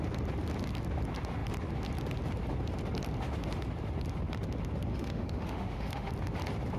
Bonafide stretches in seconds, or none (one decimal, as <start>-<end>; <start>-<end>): 0.0-4.9; 6.1-6.8